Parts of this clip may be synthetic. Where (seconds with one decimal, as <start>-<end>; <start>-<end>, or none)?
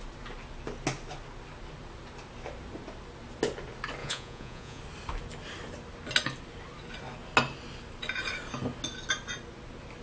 4.0-4.8